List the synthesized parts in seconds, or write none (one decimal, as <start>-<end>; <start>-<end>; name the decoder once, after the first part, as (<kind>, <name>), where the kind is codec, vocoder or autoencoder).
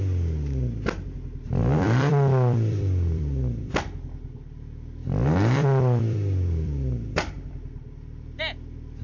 1.6-3.7 (vocoder, BigVGAN v2); 5.0-8.4